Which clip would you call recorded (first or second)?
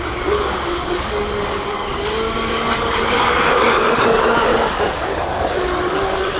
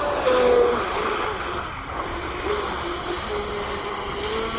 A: second